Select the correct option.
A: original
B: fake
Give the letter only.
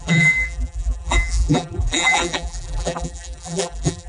B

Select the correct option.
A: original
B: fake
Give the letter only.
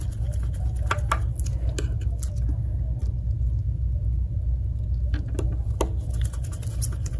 A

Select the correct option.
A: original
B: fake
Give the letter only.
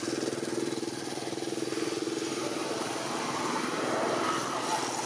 A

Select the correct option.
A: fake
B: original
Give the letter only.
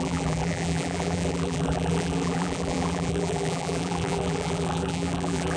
A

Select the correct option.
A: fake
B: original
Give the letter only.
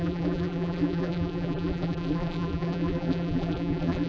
A